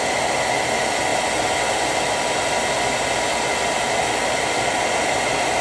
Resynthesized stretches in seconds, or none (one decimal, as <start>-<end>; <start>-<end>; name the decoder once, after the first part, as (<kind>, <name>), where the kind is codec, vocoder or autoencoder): none